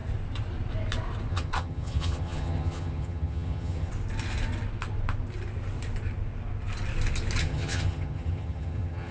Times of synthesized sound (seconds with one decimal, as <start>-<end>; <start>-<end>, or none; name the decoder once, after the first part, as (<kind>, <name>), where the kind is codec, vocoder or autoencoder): 1.3-3.9 (vocoder, HiFi-GAN); 7.4-9.1